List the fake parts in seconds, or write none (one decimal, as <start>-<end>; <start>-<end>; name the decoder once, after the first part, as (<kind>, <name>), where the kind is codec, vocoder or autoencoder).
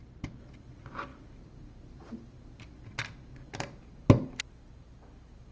none